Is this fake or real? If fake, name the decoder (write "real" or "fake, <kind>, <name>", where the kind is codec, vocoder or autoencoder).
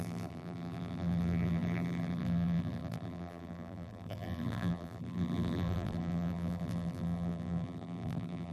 fake, vocoder, BigVGAN v2